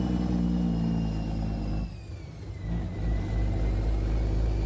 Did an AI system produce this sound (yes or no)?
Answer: no